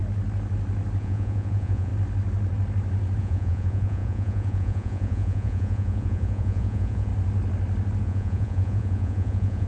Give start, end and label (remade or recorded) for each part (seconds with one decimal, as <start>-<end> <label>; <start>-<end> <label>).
0.0-1.0 recorded; 1.0-1.9 remade; 1.9-3.2 recorded; 3.2-7.1 remade; 7.1-8.0 recorded; 8.0-9.7 remade